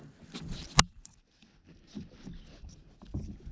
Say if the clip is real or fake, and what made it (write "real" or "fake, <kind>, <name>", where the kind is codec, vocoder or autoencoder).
real